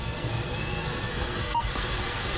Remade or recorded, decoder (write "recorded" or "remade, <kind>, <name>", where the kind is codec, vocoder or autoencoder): remade, codec, SNAC